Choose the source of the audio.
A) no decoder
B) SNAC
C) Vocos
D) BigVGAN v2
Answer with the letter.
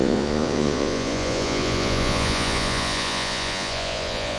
C